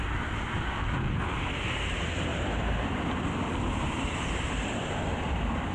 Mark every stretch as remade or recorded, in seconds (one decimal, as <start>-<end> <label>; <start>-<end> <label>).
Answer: 0.0-2.3 recorded; 2.3-4.5 remade; 4.5-5.7 recorded